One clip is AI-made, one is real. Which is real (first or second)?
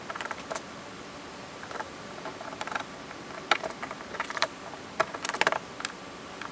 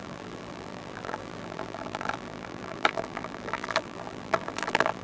first